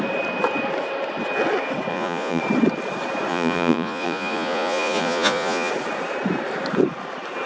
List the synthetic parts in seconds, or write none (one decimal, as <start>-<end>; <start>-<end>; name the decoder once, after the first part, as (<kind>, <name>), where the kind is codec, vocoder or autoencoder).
1.9-2.4 (vocoder, Vocos); 3.3-5.7